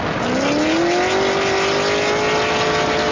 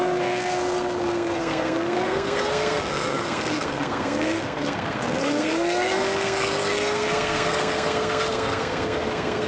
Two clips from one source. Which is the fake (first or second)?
second